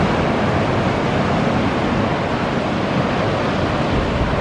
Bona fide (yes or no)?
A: yes